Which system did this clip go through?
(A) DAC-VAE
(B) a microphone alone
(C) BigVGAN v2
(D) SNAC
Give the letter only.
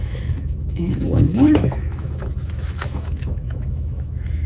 A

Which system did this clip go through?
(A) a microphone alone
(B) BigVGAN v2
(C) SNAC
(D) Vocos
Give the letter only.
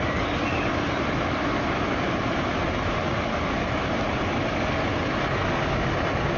A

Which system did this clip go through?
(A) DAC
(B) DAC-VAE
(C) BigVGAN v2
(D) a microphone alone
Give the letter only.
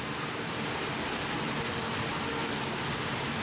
D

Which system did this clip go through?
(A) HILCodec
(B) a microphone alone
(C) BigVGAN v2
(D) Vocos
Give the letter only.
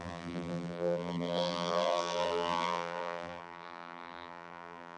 C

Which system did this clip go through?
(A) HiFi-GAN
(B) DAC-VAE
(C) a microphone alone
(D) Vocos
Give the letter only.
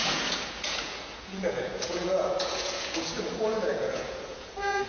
D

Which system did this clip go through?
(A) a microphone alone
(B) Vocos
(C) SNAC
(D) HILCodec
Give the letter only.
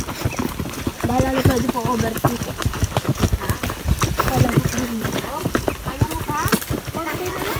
A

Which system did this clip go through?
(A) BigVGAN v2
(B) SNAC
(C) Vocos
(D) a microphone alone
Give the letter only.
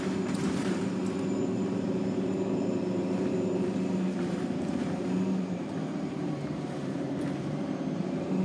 A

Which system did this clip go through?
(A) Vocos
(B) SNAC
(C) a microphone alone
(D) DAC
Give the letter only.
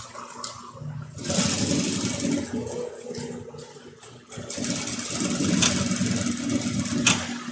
C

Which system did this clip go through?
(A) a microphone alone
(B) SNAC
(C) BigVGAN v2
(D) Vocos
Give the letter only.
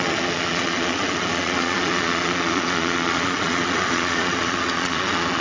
D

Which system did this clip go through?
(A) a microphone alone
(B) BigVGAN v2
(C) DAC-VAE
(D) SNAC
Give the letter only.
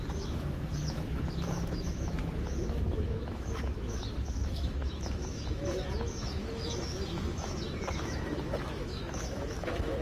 C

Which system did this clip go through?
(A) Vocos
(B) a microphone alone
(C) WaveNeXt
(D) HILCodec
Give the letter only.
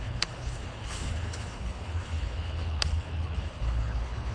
D